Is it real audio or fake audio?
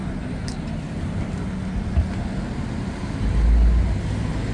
real